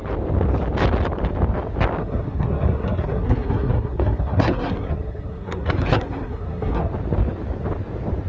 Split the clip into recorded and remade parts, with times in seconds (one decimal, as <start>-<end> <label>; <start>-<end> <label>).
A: 0.0-2.0 recorded; 2.0-6.9 remade; 6.9-8.3 recorded